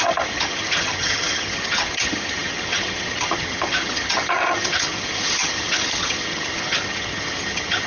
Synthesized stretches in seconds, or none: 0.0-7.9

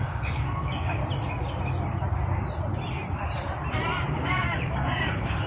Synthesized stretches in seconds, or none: 0.0-1.0; 4.1-5.5

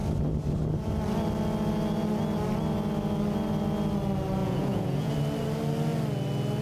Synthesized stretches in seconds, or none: 4.4-5.1

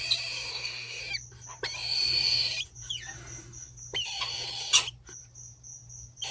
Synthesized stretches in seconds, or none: 0.5-1.0

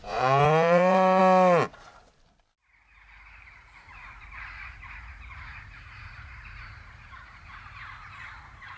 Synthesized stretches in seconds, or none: 0.0-1.2; 3.5-8.8